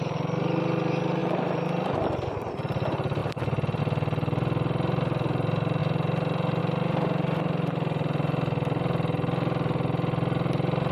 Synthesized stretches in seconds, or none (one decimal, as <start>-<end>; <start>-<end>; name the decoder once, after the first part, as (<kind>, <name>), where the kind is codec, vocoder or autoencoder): 1.2-2.5 (vocoder, BigVGAN v2); 3.2-3.8